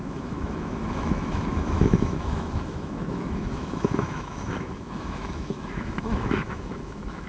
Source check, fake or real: fake